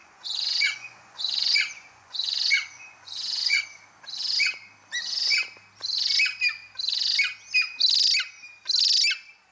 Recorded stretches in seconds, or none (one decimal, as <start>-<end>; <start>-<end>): 3.6-9.5